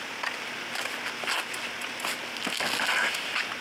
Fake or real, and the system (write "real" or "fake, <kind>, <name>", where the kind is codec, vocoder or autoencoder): real